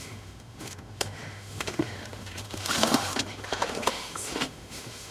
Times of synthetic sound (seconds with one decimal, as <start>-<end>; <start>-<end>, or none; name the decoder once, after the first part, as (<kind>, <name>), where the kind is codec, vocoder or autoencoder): 0.0-5.1 (autoencoder, DAC-VAE)